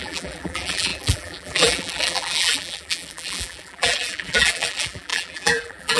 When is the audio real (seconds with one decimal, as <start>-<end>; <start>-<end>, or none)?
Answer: none